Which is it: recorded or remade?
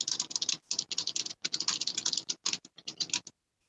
recorded